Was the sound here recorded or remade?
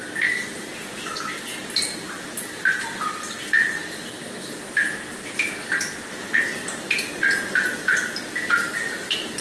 recorded